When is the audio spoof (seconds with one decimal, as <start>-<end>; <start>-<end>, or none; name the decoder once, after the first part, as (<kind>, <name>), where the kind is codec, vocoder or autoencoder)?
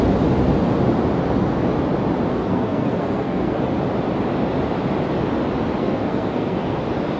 2.3-3.6 (codec, SNAC); 5.8-6.8